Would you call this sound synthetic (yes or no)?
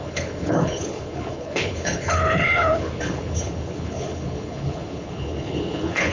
yes